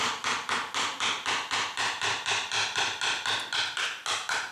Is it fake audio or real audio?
real